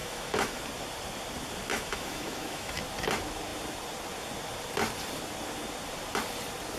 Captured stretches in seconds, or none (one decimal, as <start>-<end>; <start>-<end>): 0.6-1.7; 2.8-6.8